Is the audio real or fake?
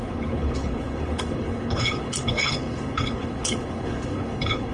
fake